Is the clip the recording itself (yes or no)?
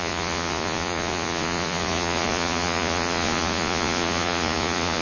no